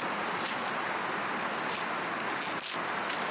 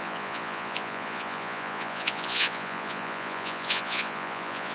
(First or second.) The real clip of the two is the first